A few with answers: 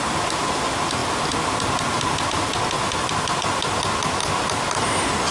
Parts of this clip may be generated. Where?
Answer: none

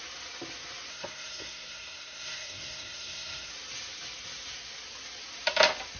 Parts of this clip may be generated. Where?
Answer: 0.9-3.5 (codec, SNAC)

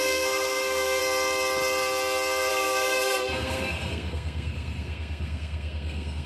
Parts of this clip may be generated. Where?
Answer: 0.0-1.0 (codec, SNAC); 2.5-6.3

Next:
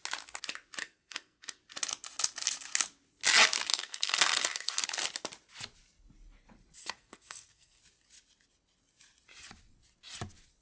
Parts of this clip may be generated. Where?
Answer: 0.8-1.6 (codec, SNAC); 3.7-4.8; 6.8-7.8

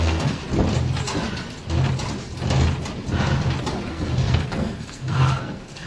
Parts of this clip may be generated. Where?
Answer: 0.0-0.4 (codec, SNAC); 3.9-5.9

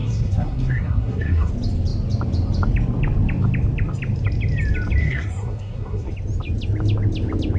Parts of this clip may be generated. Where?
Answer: 0.0-1.5 (codec, SNAC); 5.0-6.1